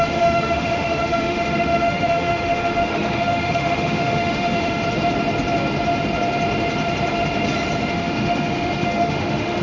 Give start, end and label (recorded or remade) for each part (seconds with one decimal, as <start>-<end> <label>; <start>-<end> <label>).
0.0-4.8 remade; 4.8-7.9 recorded; 7.9-9.6 remade